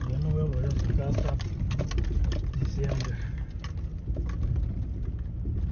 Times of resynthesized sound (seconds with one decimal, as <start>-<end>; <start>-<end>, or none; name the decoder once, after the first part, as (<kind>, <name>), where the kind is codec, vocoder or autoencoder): none